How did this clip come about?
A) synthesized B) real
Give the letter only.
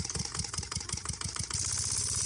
B